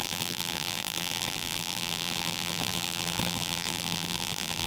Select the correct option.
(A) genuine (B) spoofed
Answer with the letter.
B